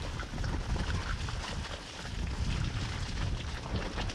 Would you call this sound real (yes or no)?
yes